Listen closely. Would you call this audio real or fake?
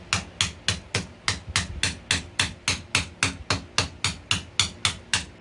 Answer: real